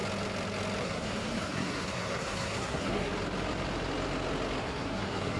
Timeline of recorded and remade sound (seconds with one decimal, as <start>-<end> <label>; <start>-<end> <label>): 0.0-0.8 recorded; 0.8-3.1 remade; 3.1-4.6 recorded; 4.6-5.4 remade